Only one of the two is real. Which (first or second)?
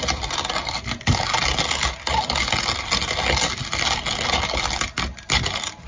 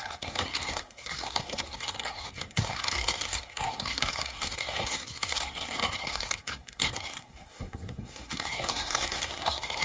first